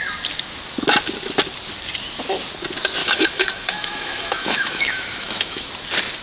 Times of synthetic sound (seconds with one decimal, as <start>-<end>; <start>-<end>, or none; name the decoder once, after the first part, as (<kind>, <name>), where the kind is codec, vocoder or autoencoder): 3.0-5.7 (autoencoder, DAC-VAE)